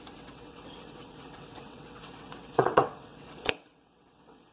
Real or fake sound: fake